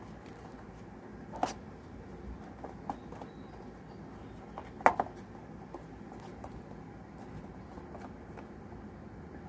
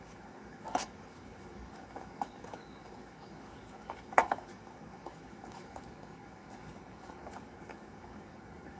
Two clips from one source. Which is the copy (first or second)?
second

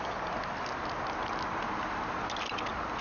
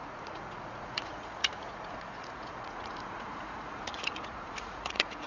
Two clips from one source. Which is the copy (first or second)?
second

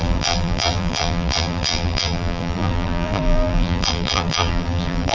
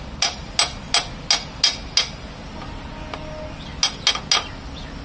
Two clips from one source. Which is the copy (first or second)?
first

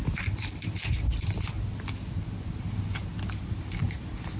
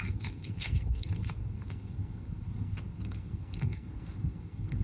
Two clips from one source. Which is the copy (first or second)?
second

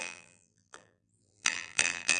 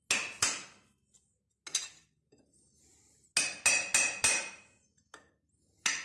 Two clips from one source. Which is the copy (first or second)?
first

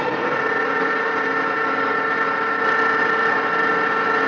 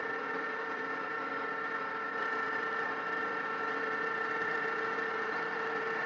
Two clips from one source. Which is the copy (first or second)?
second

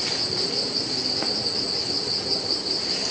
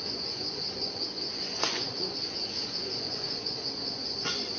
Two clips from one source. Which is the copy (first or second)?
second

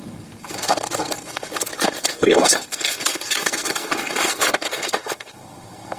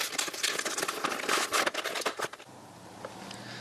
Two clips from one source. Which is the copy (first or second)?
first